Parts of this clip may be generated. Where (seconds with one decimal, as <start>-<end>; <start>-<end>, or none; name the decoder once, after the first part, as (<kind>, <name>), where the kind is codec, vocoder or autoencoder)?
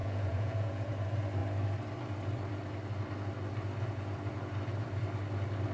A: 0.0-0.9 (vocoder, Vocos)